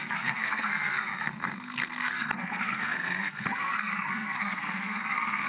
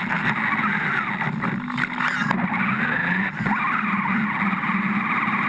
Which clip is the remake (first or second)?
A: first